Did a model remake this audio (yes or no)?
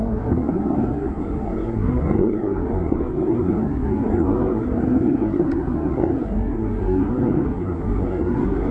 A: yes